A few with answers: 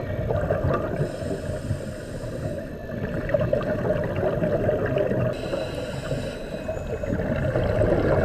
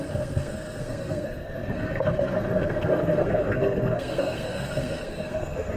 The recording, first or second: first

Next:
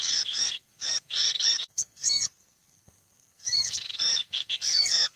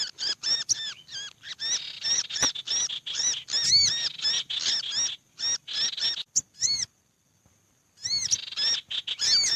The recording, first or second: second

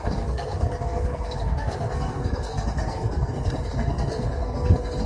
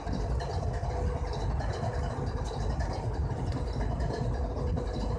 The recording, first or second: second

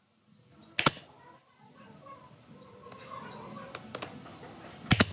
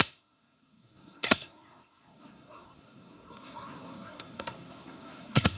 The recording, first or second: first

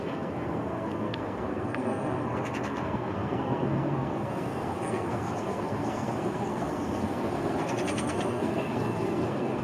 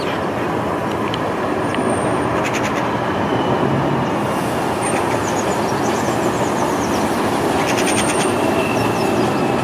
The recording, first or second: second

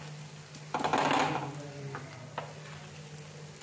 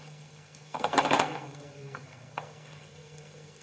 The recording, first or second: first